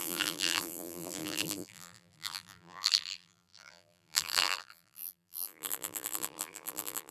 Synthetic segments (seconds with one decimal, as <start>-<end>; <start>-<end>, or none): 0.0-7.1